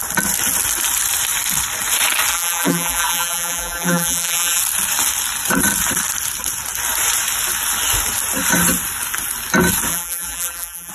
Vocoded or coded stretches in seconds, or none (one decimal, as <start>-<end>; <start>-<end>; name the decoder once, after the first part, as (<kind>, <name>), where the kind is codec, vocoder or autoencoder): 2.3-4.6 (vocoder, BigVGAN v2); 9.9-10.9